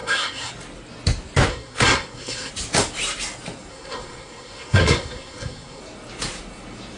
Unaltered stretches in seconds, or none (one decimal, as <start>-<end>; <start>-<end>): 0.5-1.5; 2.5-3.7; 5.8-7.0